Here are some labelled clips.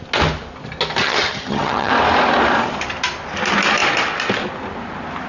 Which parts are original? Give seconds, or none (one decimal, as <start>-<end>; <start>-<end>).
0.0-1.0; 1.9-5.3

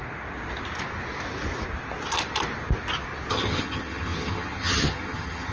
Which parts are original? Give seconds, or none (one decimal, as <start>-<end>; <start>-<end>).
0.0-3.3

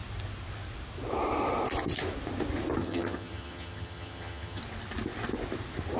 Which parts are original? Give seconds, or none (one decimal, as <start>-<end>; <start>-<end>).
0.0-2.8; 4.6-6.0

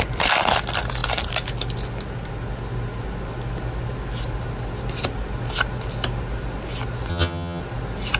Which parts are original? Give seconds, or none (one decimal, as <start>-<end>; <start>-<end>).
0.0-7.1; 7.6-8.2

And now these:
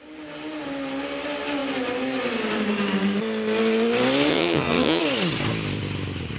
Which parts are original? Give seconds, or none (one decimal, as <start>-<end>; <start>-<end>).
0.0-4.3; 5.0-6.4

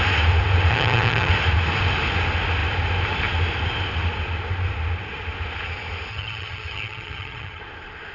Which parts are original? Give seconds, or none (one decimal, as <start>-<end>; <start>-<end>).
0.0-0.7; 1.3-6.1; 7.6-8.1

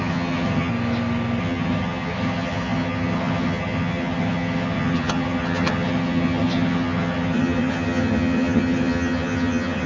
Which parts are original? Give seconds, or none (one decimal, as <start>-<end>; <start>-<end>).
0.7-1.4

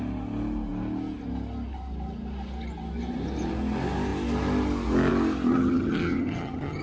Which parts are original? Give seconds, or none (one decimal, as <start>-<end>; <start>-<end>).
0.0-5.5